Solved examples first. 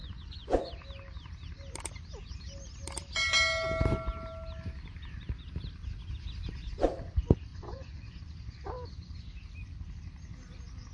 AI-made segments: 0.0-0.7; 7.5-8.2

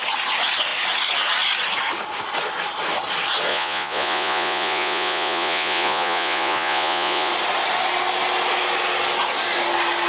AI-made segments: 3.5-7.3

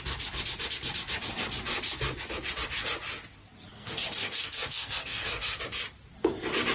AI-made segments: 3.7-5.6

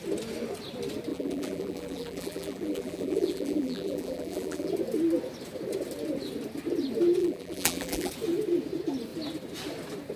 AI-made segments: 1.1-4.7; 7.2-8.1

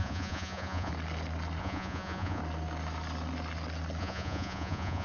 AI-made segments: 0.0-0.9; 1.6-2.4; 4.0-5.0

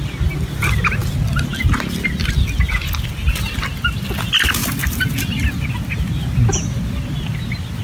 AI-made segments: none